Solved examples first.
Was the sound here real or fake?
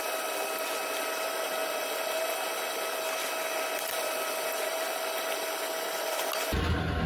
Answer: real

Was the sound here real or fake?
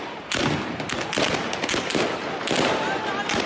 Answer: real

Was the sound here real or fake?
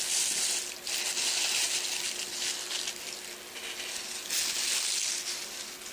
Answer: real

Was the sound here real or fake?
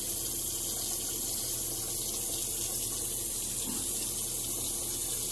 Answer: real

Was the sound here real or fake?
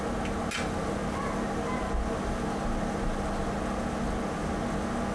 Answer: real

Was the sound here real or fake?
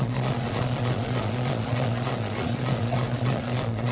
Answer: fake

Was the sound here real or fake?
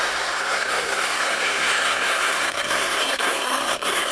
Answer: fake